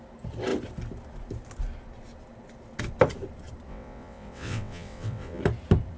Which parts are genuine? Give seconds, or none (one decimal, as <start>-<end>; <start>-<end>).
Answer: 0.0-3.7; 5.4-6.0